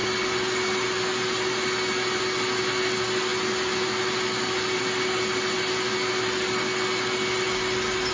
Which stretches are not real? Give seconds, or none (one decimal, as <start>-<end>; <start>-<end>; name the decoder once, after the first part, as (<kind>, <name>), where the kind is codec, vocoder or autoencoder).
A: none